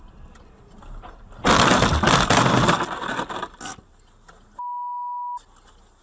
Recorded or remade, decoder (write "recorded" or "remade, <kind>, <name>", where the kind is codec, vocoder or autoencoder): recorded